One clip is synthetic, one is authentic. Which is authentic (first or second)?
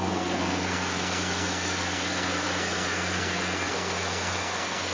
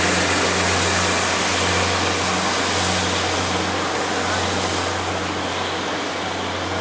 second